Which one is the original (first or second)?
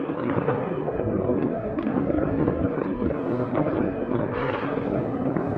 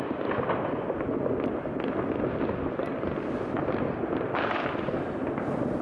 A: second